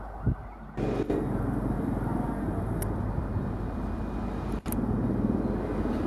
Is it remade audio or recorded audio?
recorded